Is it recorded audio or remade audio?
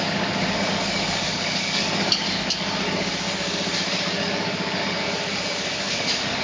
remade